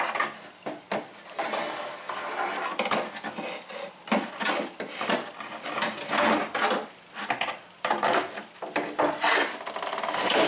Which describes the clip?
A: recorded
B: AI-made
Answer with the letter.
B